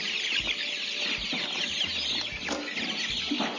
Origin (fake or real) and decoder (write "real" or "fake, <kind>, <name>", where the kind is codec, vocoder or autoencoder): real